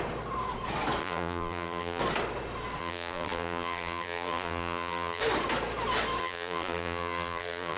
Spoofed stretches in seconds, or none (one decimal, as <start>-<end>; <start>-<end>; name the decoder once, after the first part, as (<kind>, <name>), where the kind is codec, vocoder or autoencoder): 1.0-2.0 (vocoder, BigVGAN v2); 2.8-5.2; 6.2-7.8